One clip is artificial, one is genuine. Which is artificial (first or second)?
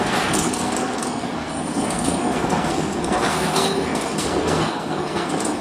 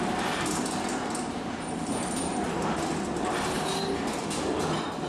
first